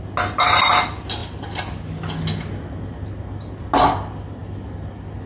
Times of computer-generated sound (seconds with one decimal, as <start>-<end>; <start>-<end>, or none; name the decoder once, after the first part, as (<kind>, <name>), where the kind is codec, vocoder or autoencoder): none